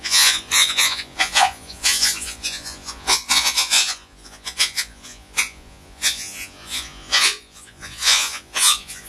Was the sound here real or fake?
fake